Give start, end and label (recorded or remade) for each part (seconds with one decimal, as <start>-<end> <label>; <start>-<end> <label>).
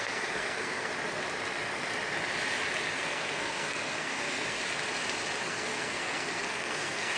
0.0-0.9 remade; 0.9-2.9 recorded; 2.9-4.6 remade; 4.6-5.4 recorded; 5.4-7.2 remade